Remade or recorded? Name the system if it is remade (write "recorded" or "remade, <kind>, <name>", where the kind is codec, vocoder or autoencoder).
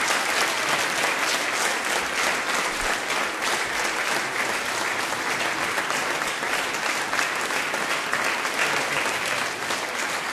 recorded